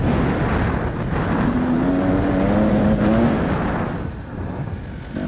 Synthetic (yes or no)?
no